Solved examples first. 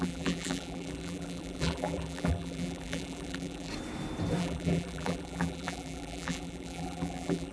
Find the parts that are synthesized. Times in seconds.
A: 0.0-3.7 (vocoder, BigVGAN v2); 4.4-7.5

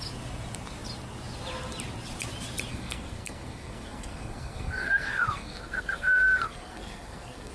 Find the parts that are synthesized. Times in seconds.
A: 2.7-7.5 (codec, SNAC)

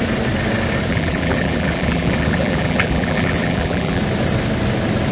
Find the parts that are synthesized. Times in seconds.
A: 0.9-4.0 (vocoder, BigVGAN v2)

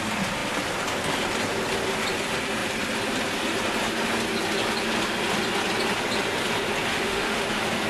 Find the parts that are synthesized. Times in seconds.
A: 6.9-7.4 (autoencoder, DAC-VAE)

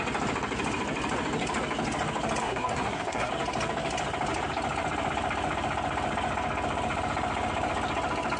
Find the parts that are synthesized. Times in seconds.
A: 2.4-3.3 (codec, SNAC)